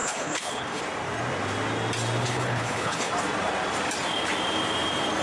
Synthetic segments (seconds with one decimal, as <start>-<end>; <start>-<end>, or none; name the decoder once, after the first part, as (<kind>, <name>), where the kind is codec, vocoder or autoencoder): 0.0-0.8 (codec, HILCodec); 2.2-3.1